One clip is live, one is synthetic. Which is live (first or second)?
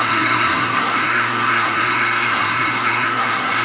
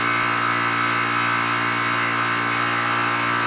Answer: second